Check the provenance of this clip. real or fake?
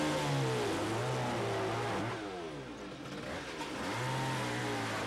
real